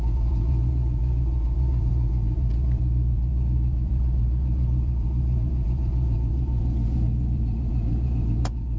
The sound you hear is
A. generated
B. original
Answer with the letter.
A